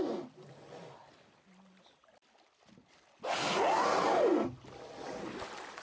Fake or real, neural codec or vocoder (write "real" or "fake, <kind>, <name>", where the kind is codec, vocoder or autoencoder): real